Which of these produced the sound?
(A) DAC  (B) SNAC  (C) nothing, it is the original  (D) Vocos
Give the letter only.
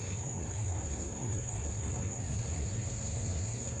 B